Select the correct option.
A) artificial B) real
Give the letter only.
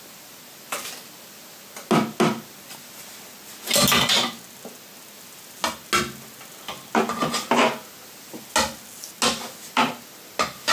B